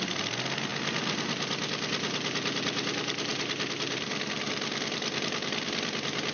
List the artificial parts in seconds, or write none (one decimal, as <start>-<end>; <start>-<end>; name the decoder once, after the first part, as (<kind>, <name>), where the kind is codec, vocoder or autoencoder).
none